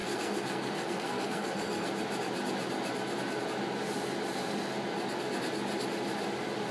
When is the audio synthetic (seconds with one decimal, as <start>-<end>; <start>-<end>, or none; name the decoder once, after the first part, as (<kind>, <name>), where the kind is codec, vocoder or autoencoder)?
0.0-1.9 (codec, SNAC)